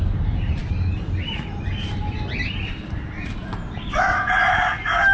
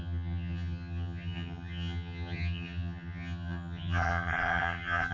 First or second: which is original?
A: first